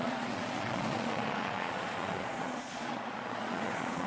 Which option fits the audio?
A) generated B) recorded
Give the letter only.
A